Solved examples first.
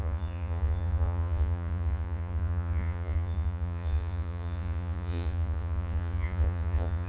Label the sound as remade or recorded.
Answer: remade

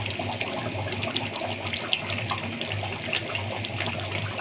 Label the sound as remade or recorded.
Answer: recorded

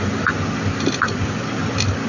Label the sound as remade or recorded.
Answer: recorded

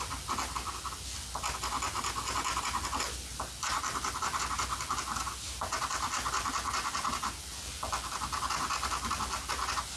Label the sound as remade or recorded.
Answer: recorded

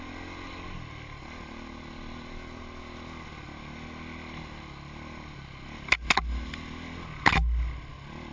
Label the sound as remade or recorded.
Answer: recorded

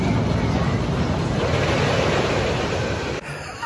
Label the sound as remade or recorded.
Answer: recorded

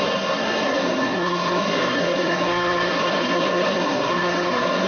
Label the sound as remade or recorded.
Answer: remade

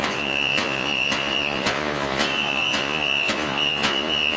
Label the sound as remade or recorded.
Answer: remade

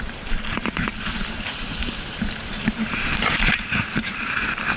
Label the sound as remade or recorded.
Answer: remade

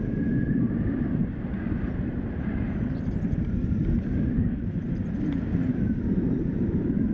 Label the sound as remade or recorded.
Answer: remade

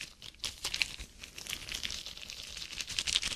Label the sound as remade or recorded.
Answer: recorded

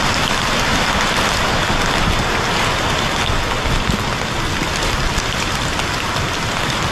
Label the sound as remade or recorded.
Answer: recorded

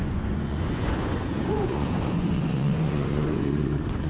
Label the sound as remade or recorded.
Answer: remade